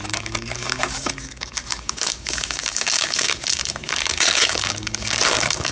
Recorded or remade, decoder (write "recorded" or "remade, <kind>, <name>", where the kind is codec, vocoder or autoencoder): remade, codec, DAC